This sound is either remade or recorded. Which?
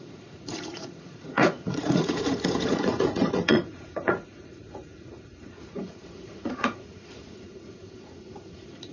remade